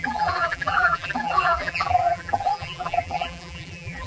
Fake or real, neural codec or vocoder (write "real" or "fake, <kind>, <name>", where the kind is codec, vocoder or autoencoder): fake, vocoder, BigVGAN v2